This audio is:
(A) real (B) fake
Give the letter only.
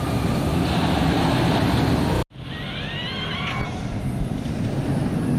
A